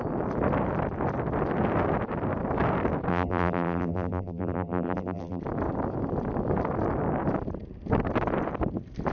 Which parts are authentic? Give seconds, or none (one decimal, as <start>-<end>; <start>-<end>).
0.0-3.1; 5.4-9.1